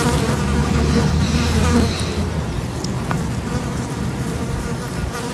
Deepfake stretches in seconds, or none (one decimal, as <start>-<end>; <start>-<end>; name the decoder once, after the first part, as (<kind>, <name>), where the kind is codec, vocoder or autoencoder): 0.6-1.2 (codec, HILCodec)